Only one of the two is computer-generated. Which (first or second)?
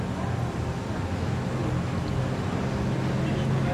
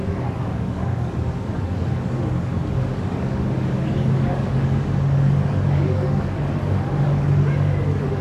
second